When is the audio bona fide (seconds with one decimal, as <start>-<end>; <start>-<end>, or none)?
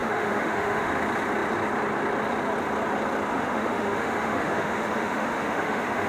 0.9-3.3